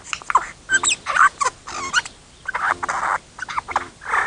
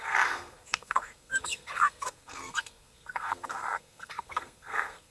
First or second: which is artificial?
second